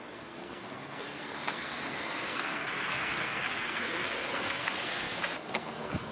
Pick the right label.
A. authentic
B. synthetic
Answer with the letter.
B